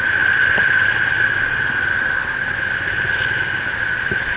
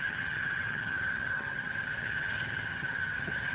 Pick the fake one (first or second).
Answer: second